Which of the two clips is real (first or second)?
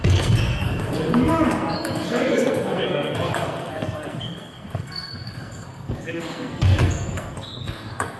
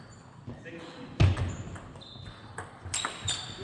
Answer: second